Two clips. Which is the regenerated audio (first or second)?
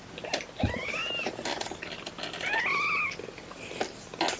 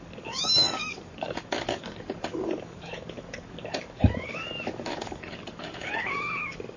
second